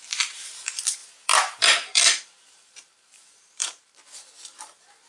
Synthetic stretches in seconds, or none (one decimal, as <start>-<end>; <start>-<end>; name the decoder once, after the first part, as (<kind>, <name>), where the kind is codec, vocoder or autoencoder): 0.0-5.1 (vocoder, BigVGAN v2)